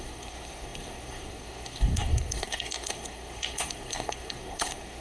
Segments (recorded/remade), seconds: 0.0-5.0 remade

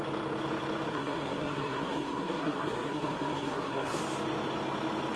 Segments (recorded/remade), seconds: 0.0-0.9 recorded; 0.9-4.0 remade; 4.0-5.2 recorded

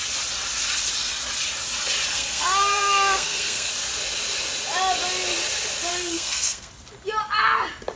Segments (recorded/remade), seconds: 0.0-2.1 recorded; 2.1-3.7 remade; 3.7-5.9 recorded; 5.9-6.7 remade; 6.7-8.0 recorded

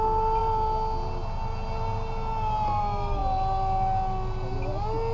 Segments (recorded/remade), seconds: 0.0-5.1 recorded

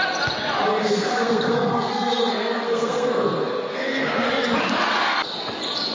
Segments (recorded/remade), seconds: 0.0-0.8 recorded; 0.8-4.3 remade; 4.3-5.9 recorded

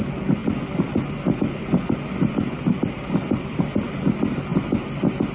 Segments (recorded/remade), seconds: 0.0-5.3 recorded